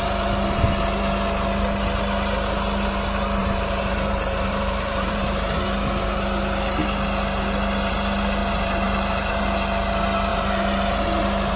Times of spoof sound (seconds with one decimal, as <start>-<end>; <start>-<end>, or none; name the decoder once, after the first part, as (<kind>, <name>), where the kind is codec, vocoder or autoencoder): 3.4-5.5 (vocoder, BigVGAN v2); 8.4-9.4; 10.3-11.2